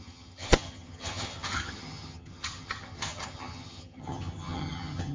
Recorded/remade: remade